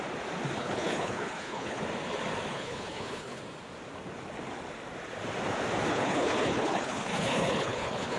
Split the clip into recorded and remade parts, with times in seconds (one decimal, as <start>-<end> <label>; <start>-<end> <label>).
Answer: 0.0-0.6 recorded; 0.6-1.8 remade; 1.8-2.5 recorded; 2.5-3.4 remade; 3.4-5.9 recorded; 5.9-8.2 remade